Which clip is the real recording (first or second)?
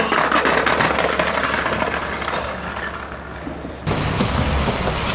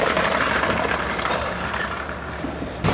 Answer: first